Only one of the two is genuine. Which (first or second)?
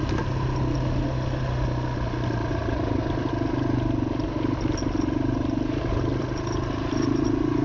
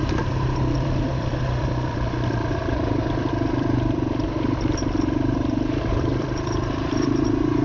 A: first